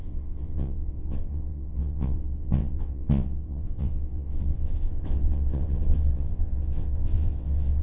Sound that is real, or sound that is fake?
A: fake